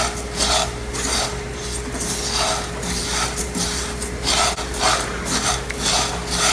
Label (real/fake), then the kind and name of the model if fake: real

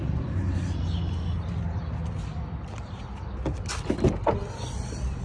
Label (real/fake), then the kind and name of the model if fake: real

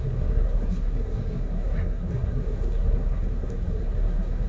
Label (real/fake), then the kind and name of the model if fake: fake, codec, SNAC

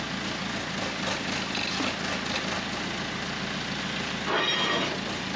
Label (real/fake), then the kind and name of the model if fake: real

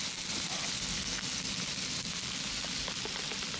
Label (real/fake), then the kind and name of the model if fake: real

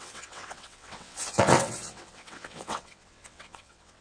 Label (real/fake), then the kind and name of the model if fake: fake, vocoder, WaveNeXt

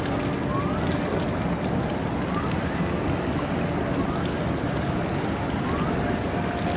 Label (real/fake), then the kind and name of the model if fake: real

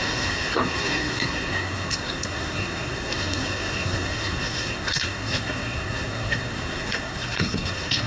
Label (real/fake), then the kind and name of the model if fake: fake, codec, SNAC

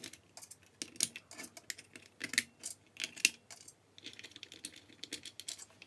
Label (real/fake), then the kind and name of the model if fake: real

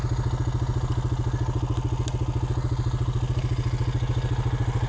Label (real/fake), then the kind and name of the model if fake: real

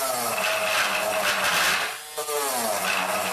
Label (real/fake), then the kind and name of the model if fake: real